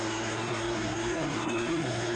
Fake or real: fake